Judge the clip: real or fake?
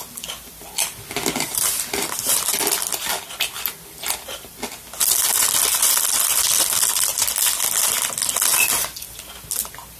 real